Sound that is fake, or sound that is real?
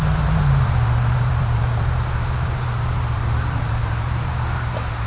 fake